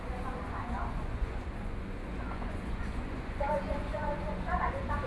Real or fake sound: fake